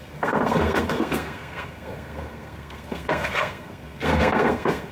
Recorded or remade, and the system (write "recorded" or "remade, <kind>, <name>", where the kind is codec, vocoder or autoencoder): remade, codec, SNAC